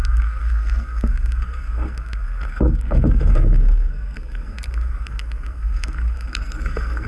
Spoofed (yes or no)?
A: yes